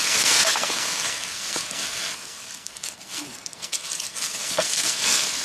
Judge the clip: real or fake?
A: fake